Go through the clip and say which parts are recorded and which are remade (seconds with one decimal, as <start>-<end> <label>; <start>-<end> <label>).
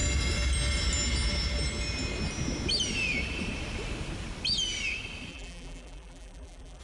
0.0-5.3 recorded; 5.3-6.8 remade